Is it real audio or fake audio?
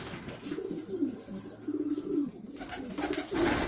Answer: real